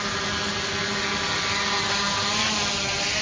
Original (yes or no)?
yes